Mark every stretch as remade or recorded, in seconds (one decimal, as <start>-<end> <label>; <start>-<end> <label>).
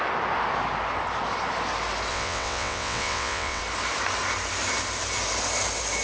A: 0.0-2.1 recorded; 2.1-3.6 remade; 3.6-6.0 recorded